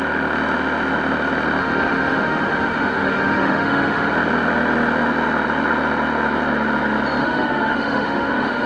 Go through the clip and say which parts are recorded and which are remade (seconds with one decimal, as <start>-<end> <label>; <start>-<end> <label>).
0.0-1.6 recorded; 1.6-4.1 remade; 4.1-7.2 recorded; 7.2-8.7 remade